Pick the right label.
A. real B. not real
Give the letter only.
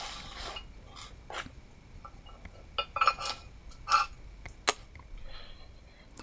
A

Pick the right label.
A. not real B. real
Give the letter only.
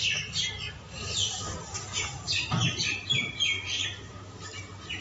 B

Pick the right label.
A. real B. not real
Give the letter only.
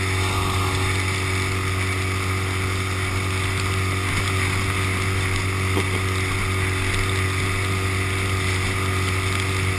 A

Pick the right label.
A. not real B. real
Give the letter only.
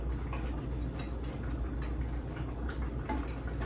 B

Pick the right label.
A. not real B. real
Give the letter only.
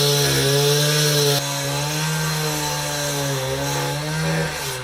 B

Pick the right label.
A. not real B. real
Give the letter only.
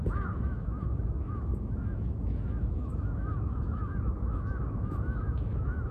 A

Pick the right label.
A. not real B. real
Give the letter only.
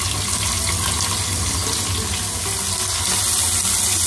B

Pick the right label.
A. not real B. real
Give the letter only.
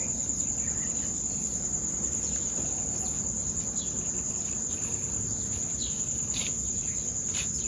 B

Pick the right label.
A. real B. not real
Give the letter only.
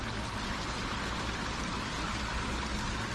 A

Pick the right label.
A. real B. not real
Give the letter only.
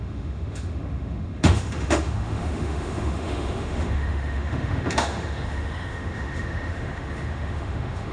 B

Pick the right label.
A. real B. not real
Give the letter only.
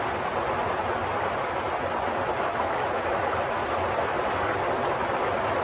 A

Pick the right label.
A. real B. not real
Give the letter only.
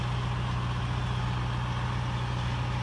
A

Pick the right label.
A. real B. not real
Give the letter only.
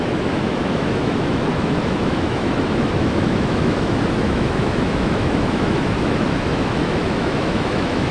B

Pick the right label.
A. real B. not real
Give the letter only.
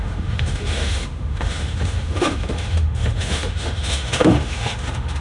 B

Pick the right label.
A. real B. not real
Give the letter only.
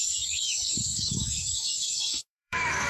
B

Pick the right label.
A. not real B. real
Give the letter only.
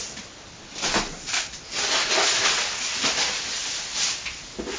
B